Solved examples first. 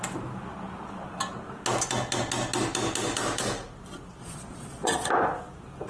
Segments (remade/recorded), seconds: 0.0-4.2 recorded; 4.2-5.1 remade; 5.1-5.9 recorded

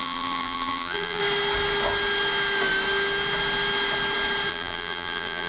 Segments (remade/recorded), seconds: 0.0-1.2 remade; 1.2-4.5 recorded; 4.5-5.5 remade

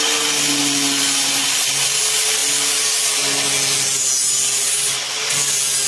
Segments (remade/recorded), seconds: 0.0-5.9 recorded

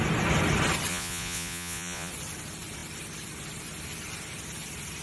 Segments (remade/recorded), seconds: 0.0-0.9 recorded; 0.9-2.1 remade; 2.1-5.0 recorded